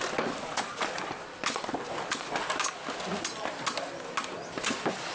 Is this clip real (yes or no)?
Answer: yes